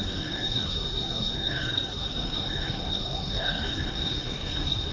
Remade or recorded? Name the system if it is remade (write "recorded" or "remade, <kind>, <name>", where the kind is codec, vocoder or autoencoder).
remade, codec, SNAC